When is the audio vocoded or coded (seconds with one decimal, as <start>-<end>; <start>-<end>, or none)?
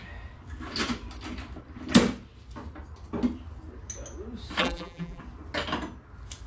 4.6-5.2